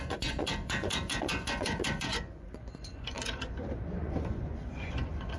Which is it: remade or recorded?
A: remade